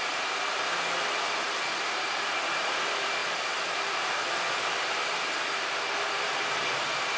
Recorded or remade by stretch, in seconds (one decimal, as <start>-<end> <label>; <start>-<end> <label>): 0.0-3.2 remade; 3.2-6.0 recorded; 6.0-7.2 remade